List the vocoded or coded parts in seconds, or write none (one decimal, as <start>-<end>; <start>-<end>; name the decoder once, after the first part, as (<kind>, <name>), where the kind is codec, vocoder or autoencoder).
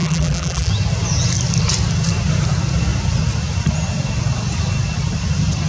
0.0-0.7 (vocoder, BigVGAN v2)